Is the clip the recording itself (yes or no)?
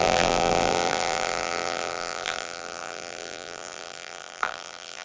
no